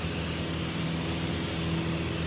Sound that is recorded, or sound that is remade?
recorded